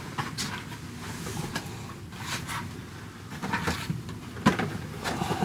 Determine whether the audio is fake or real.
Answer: real